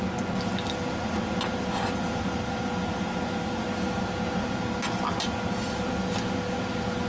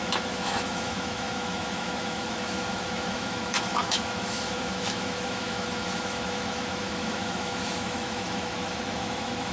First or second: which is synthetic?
second